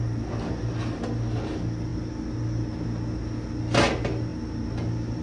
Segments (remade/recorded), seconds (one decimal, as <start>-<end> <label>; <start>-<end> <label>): 0.0-5.2 recorded